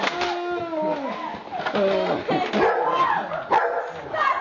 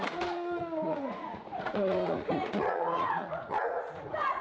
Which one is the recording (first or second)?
first